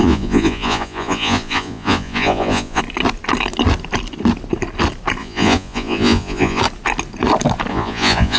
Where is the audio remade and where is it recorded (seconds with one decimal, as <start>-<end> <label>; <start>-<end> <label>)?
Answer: 0.0-2.8 remade; 2.8-5.2 recorded; 5.2-6.6 remade; 6.6-7.7 recorded; 7.7-8.4 remade